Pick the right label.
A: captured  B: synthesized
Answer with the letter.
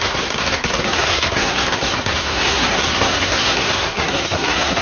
B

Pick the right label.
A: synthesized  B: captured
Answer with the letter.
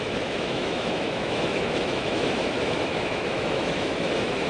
A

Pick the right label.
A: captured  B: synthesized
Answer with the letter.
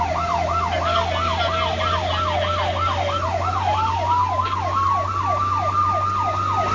A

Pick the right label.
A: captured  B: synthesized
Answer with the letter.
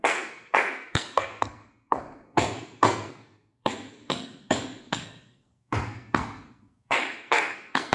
B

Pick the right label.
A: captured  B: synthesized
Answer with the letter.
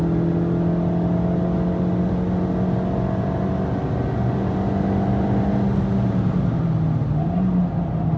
A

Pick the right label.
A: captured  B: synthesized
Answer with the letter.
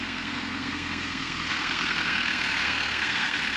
B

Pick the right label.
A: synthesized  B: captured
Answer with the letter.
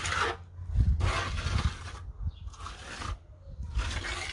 B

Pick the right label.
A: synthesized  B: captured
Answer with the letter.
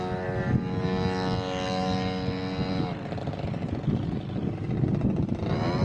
B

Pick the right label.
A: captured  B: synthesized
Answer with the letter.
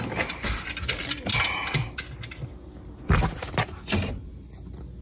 A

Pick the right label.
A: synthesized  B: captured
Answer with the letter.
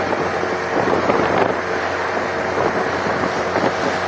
A